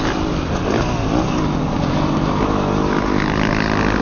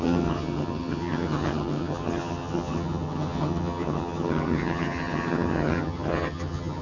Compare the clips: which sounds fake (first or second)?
second